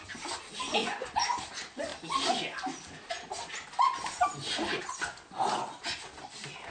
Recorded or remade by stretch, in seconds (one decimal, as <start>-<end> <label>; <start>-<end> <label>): 0.0-0.8 recorded; 0.8-1.4 remade; 1.4-4.3 recorded; 4.3-4.8 remade; 4.8-6.7 recorded